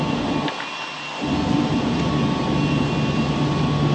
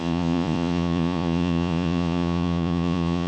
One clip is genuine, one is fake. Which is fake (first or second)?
second